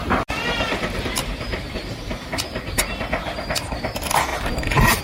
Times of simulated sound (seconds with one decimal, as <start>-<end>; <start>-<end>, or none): 1.2-2.8; 4.3-5.0